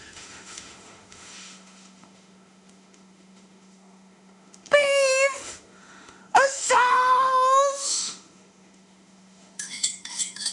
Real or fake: fake